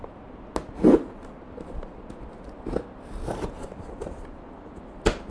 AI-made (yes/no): no